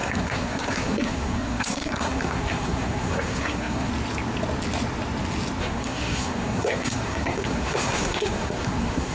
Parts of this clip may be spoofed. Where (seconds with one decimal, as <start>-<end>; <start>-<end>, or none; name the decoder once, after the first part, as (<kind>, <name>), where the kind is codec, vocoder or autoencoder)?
0.0-3.9 (codec, SNAC); 5.6-9.1